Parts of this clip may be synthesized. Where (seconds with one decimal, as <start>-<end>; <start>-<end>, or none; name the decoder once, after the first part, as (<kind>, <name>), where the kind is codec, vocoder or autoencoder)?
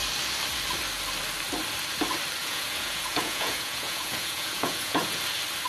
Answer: 2.4-5.2 (vocoder, Vocos)